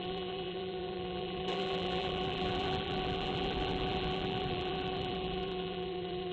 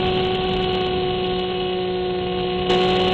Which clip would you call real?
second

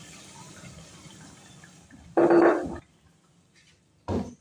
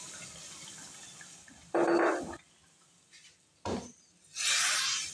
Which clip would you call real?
second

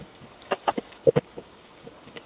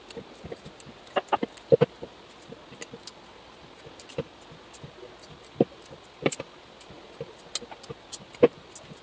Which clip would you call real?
second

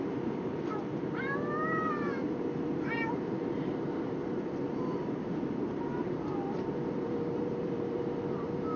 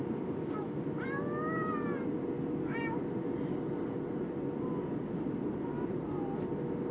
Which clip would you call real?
second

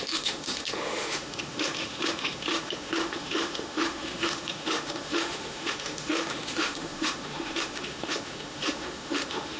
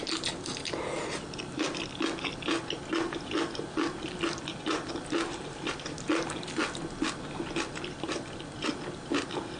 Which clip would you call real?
second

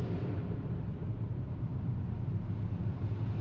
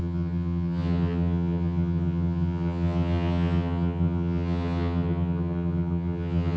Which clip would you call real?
first